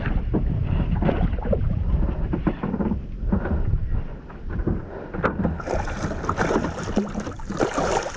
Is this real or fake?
real